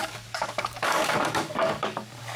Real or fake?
fake